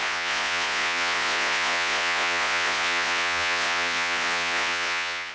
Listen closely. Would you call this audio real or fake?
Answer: fake